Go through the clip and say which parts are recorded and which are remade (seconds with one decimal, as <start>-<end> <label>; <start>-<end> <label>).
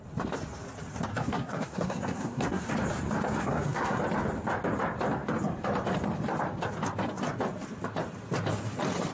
0.0-1.1 recorded; 1.1-2.7 remade; 2.7-3.4 recorded; 3.4-4.0 remade; 4.0-9.1 recorded